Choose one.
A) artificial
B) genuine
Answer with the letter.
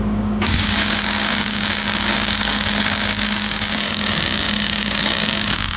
A